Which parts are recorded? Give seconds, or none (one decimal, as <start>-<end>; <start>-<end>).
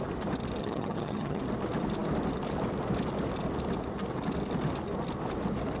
0.0-0.6; 1.4-5.8